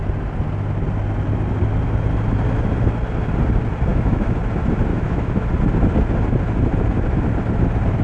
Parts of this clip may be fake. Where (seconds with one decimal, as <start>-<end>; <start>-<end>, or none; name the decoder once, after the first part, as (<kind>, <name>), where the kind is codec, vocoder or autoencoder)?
3.9-4.4 (autoencoder, DAC-VAE); 4.9-5.5